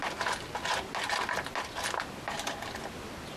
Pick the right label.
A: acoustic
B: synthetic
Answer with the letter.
A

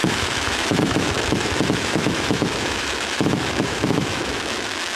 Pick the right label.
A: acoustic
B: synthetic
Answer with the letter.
B